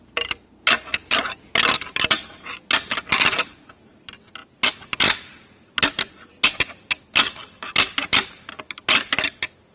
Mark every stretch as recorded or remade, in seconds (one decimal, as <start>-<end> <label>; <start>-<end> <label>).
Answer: 0.0-9.7 recorded